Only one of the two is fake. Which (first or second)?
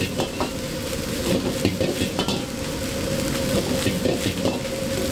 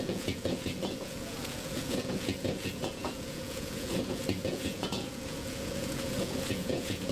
second